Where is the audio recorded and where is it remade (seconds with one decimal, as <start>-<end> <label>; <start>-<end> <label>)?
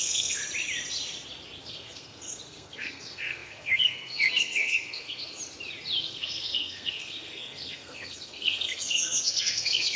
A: 0.0-0.4 remade; 0.4-1.6 recorded; 1.6-5.4 remade; 5.4-6.0 recorded; 6.0-10.0 remade